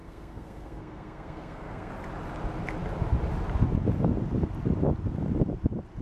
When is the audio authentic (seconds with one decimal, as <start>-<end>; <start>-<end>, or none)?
1.9-6.0